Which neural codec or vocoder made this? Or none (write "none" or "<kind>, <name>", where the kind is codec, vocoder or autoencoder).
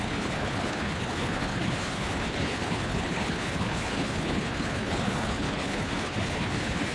codec, HILCodec